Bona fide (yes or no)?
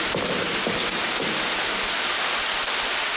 yes